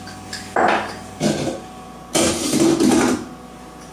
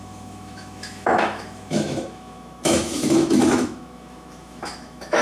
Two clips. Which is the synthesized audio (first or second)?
second